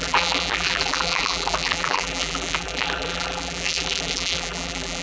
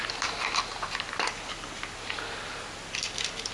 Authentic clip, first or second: second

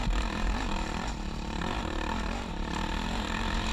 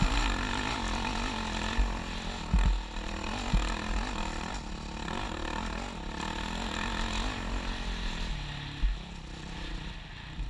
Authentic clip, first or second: second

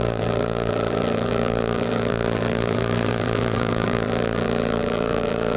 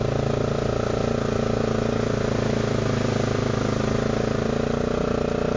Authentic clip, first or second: second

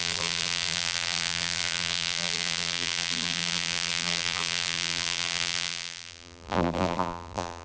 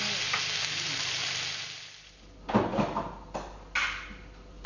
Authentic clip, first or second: second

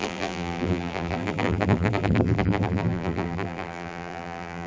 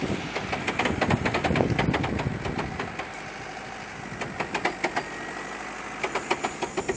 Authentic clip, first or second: second